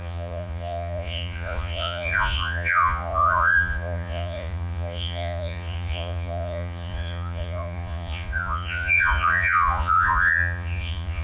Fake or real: fake